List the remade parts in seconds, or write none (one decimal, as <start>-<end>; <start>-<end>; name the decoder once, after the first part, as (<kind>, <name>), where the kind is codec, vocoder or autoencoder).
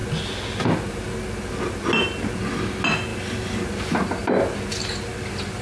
3.1-4.0 (vocoder, BigVGAN v2)